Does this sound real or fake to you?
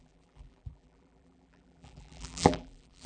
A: fake